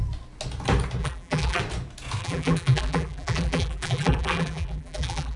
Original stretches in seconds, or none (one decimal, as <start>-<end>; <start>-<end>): 0.0-1.0; 1.6-2.2